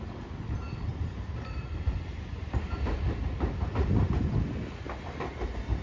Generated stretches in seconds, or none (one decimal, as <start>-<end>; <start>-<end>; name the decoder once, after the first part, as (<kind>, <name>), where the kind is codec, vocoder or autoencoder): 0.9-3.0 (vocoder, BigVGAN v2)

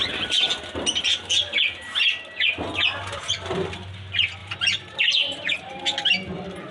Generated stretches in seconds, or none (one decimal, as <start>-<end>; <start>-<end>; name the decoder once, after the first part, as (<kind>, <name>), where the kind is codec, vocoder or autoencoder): 4.4-5.8 (vocoder, BigVGAN v2)

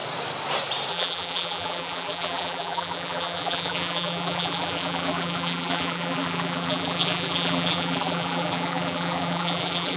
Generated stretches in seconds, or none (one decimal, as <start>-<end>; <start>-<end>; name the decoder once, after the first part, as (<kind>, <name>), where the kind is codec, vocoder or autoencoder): 0.9-10.0 (vocoder, BigVGAN v2)

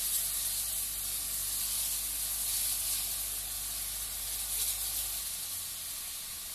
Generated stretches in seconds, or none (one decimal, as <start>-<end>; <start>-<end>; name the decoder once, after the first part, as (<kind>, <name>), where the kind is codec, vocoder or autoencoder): none